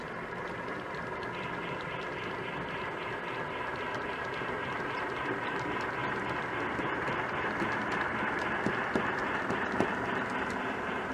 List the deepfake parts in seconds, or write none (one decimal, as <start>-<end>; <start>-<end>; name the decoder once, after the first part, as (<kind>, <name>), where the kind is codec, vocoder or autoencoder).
0.0-6.0 (vocoder, BigVGAN v2); 10.4-11.1